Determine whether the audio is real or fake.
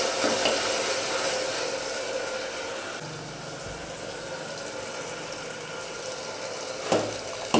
real